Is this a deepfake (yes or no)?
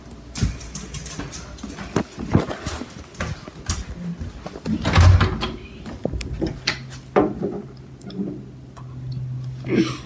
no